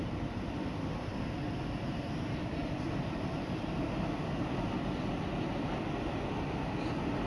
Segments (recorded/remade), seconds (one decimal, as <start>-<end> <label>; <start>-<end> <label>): 0.0-7.3 recorded